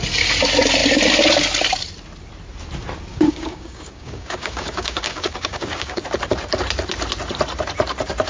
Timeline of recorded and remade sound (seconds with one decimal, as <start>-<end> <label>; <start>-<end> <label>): 0.0-3.1 recorded; 3.1-6.0 remade; 6.0-8.3 recorded